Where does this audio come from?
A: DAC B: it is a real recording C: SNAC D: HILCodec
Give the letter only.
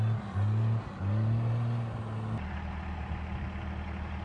B